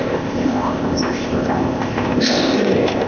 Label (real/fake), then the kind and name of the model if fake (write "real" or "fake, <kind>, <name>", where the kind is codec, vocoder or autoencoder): fake, codec, ZipCodec